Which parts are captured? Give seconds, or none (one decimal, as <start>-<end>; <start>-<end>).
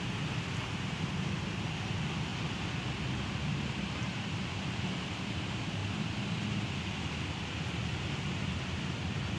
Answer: 2.3-3.4; 5.8-8.2